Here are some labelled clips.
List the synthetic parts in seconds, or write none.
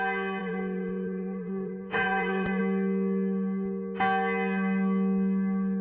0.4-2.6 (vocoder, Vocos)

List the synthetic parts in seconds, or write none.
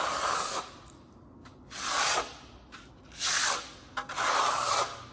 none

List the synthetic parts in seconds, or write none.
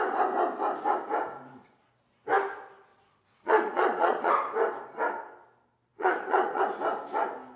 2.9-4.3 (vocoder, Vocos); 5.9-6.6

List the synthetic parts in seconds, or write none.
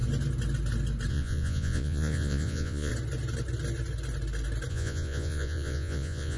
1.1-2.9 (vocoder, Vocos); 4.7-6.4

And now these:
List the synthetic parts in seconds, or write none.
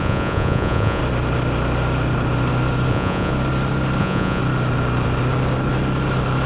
0.0-1.0 (vocoder, Vocos); 2.9-3.3; 4.0-4.4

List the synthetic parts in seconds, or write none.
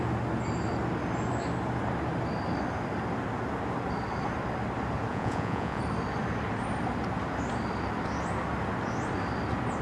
5.1-5.8 (vocoder, Vocos)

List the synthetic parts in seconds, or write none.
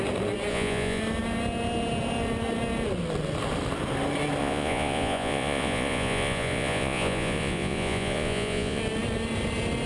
0.5-1.0 (vocoder, Vocos); 4.4-8.8